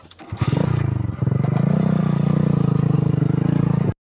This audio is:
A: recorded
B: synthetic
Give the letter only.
A